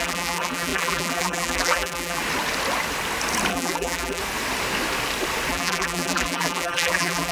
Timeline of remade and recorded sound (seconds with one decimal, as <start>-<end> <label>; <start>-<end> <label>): 0.0-2.2 remade; 2.2-3.5 recorded; 3.5-4.2 remade; 4.2-5.5 recorded; 5.5-7.3 remade